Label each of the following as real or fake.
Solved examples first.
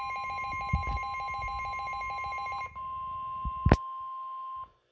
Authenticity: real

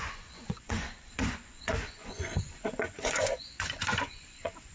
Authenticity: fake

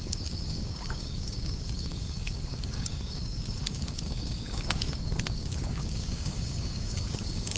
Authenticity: fake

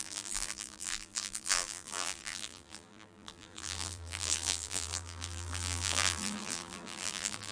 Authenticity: fake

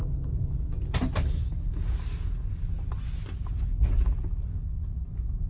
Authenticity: real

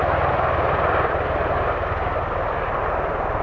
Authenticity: real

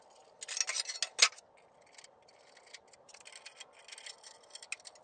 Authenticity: real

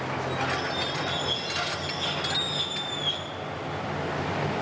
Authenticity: real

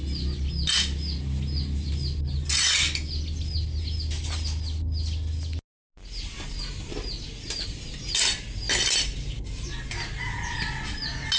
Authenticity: real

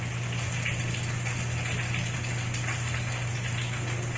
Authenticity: real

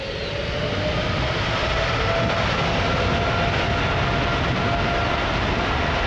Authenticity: real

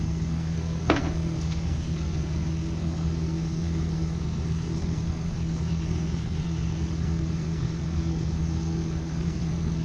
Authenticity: fake